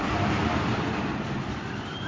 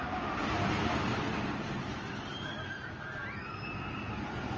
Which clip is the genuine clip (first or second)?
second